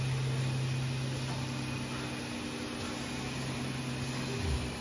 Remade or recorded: recorded